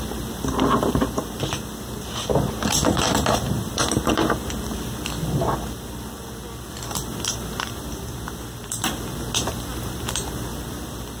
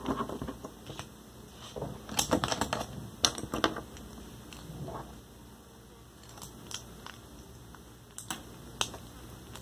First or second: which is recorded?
second